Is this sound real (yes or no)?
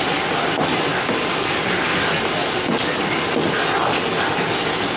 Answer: yes